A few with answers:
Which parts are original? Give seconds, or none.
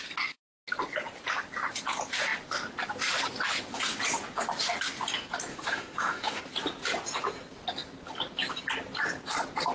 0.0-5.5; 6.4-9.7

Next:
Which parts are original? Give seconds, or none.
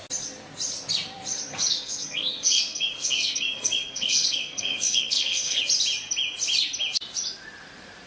0.0-1.5; 5.6-8.1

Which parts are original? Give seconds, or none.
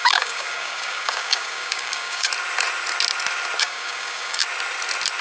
2.3-3.6; 4.4-5.2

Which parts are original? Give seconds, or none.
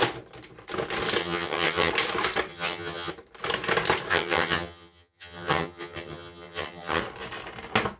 0.0-1.2; 1.9-2.5; 3.1-4.1; 7.0-8.0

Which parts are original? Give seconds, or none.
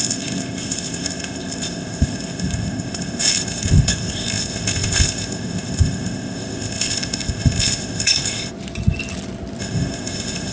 8.5-9.6